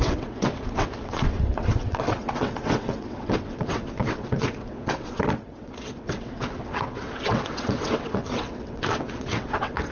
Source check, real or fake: fake